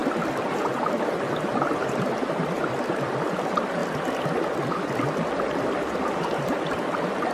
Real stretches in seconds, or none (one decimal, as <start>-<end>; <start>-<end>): 0.0-7.3